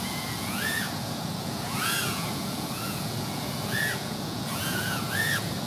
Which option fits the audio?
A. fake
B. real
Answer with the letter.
A